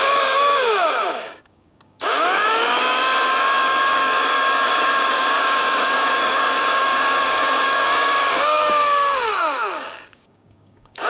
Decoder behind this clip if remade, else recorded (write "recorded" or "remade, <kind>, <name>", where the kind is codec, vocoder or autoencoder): remade, codec, DAC